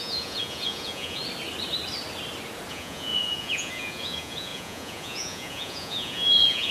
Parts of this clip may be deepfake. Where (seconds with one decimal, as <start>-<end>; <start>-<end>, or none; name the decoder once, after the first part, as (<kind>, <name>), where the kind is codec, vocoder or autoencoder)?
0.0-1.2 (vocoder, Vocos); 2.7-6.7